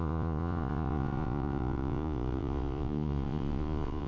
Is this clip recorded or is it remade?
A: remade